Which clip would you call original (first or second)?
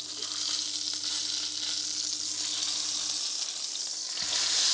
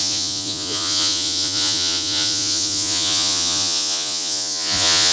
first